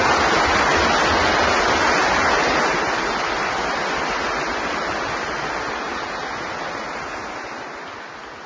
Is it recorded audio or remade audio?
recorded